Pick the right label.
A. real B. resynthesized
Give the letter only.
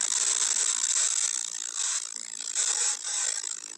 A